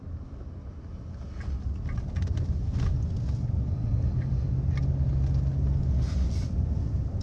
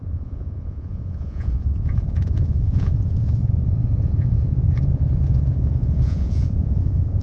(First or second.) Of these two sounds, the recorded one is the first